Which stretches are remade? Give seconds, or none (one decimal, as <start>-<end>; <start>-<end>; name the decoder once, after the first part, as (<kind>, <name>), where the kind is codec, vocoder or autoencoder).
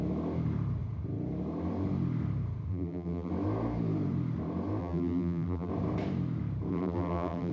2.7-3.3 (vocoder, BigVGAN v2); 4.8-5.7; 6.7-7.5